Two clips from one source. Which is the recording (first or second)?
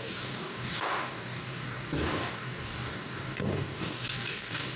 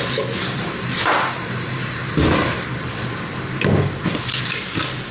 second